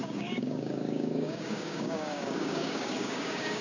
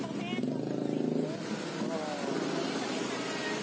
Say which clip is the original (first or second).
second